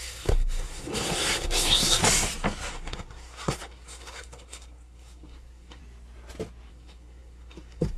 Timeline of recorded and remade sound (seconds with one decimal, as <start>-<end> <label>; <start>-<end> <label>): 0.0-2.0 remade; 2.0-2.7 recorded; 2.7-5.8 remade; 5.8-6.7 recorded; 6.7-8.0 remade